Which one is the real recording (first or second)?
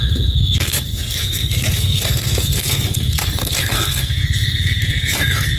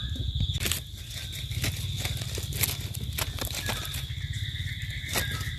second